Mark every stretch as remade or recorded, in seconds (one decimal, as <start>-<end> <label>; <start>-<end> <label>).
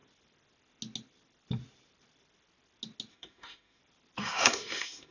0.0-3.1 recorded; 3.1-3.8 remade; 3.8-4.2 recorded; 4.2-5.1 remade